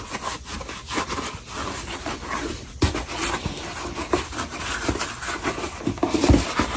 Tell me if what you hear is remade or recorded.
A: recorded